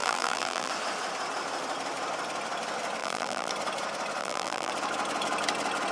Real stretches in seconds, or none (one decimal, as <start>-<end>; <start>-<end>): 0.7-3.0; 3.5-4.2; 4.7-5.9